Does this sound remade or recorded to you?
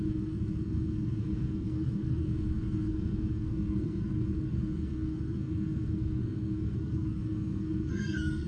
remade